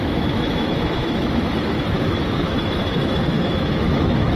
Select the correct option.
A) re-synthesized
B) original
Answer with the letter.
A